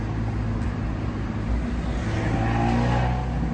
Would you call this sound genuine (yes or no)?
yes